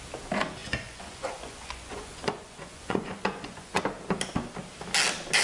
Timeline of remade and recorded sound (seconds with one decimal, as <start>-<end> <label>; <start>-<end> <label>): 0.0-0.6 recorded; 0.6-3.8 remade; 3.8-5.4 recorded